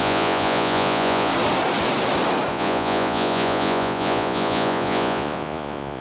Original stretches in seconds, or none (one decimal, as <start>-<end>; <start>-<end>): 1.3-2.5